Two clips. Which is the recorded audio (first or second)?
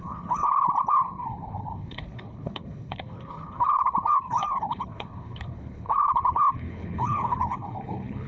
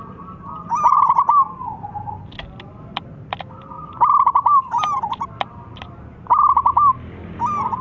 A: second